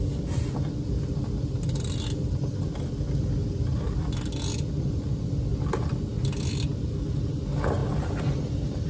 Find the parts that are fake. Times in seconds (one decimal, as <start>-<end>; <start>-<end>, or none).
none